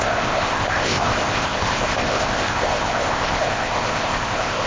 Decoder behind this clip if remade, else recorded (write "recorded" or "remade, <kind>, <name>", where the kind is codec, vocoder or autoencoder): remade, codec, ZipCodec